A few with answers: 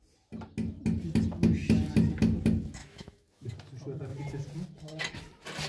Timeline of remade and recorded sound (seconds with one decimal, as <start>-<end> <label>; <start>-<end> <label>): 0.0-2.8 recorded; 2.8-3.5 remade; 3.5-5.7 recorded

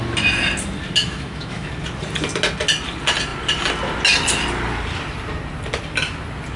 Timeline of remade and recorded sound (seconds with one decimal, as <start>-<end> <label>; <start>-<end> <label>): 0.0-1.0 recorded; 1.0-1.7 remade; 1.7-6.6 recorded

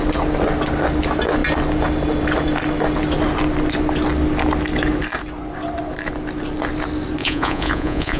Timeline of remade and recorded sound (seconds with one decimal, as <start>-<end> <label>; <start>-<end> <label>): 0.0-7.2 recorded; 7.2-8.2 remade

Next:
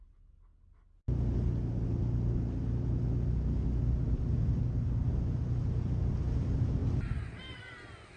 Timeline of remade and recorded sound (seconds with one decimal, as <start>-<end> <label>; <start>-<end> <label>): 0.0-8.2 recorded

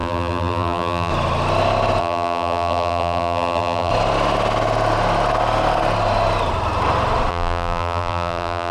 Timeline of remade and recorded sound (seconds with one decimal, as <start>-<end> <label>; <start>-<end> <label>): 0.0-1.1 remade; 1.1-2.0 recorded; 2.0-3.9 remade; 3.9-7.3 recorded; 7.3-8.7 remade

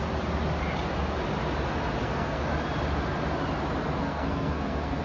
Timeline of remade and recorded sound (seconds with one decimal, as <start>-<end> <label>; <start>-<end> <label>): 0.0-2.0 recorded; 2.0-2.5 remade; 2.5-4.0 recorded; 4.0-5.0 remade

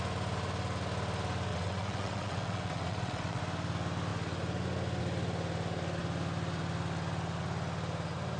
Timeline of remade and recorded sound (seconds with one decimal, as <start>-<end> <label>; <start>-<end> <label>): 0.0-1.5 recorded; 1.5-3.4 remade; 3.4-8.4 recorded

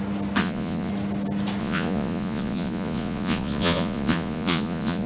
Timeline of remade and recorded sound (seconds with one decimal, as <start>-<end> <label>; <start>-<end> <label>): 0.0-0.4 recorded; 0.4-0.9 remade; 0.9-1.6 recorded; 1.6-5.1 remade